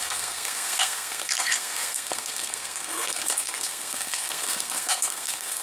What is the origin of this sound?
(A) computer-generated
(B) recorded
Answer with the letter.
A